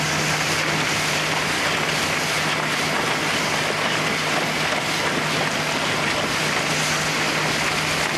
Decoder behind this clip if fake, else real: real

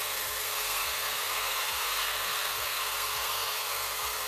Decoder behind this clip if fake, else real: fake, codec, SNAC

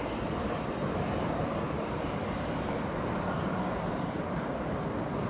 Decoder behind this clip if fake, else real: real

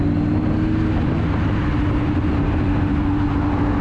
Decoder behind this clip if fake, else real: real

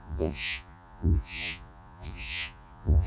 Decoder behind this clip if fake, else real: fake, vocoder, Vocos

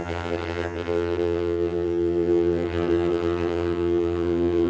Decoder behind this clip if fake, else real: fake, vocoder, HiFi-GAN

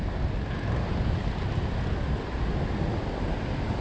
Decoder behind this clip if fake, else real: real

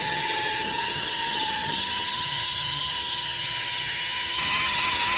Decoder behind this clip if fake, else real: fake, vocoder, HiFi-GAN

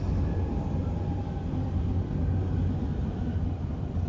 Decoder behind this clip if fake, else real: real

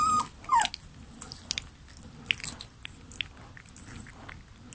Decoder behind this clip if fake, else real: real